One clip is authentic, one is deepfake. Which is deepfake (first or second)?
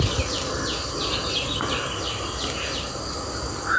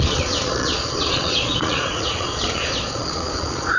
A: second